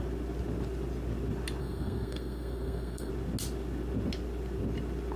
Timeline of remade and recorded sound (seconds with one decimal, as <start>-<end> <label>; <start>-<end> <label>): 0.0-1.6 recorded; 1.6-3.1 remade; 3.1-5.2 recorded